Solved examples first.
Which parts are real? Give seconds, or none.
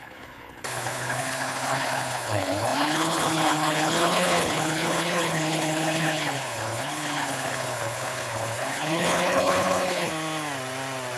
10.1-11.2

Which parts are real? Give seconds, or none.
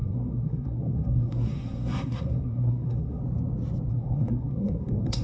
3.2-3.9